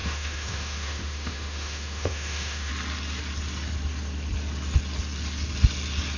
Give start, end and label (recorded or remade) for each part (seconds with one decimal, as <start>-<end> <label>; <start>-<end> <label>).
0.0-2.7 remade; 2.7-6.2 recorded